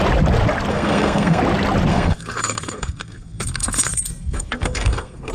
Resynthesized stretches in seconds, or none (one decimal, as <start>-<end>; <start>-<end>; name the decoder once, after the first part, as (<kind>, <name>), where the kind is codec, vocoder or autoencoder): 0.7-1.4 (codec, SNAC); 1.9-5.3